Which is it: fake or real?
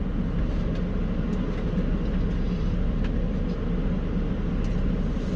real